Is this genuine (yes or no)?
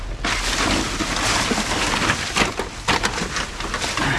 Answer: yes